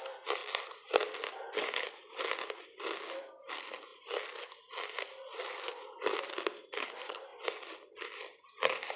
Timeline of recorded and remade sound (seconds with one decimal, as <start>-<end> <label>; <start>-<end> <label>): 0.0-9.0 recorded